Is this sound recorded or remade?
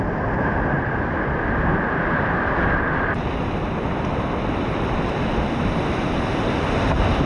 recorded